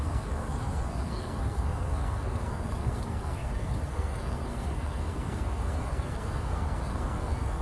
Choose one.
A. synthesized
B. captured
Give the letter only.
A